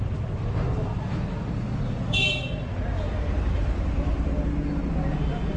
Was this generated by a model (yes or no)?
no